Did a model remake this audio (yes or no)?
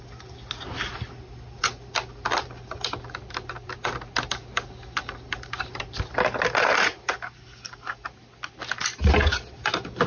no